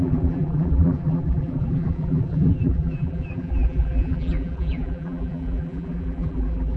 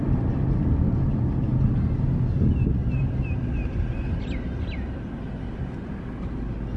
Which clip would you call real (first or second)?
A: second